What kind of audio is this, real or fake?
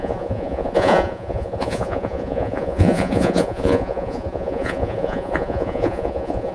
fake